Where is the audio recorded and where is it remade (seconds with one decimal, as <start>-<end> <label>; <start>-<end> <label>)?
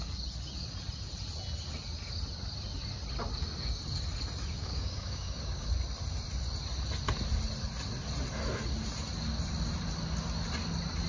0.0-4.5 recorded; 4.5-5.7 remade; 5.7-11.1 recorded